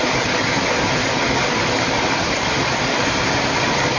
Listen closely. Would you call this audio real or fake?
fake